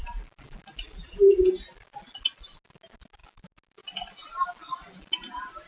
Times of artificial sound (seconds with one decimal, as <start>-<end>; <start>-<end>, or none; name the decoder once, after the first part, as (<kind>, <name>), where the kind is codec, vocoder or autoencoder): none